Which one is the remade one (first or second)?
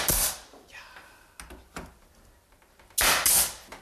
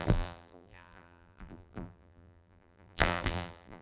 second